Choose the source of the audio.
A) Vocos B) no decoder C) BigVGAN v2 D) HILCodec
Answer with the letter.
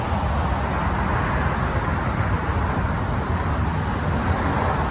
B